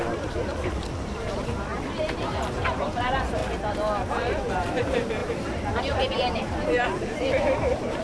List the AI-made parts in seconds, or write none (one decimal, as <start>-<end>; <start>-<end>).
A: 0.0-1.7; 2.4-3.4; 4.1-8.0